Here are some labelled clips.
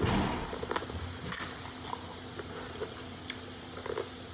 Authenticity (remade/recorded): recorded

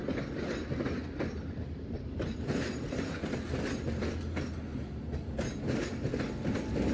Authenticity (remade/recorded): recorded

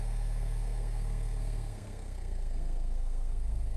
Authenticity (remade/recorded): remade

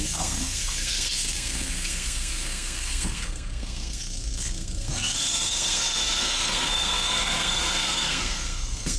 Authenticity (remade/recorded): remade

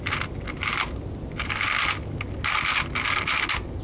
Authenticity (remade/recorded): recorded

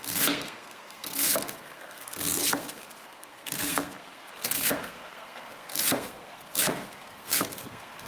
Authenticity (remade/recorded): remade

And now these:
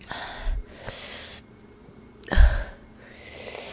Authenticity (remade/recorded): recorded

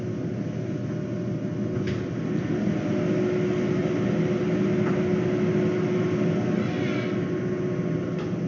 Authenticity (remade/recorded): recorded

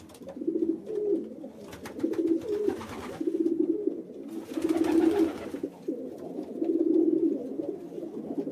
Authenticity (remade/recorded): recorded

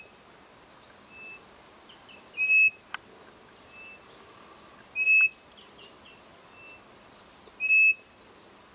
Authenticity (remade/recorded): recorded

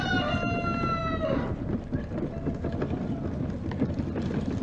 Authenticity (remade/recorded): recorded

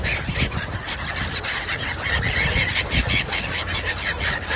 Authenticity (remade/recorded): recorded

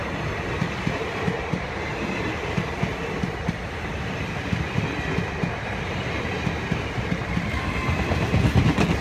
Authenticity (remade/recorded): recorded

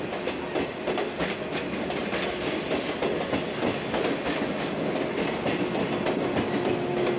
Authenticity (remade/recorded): recorded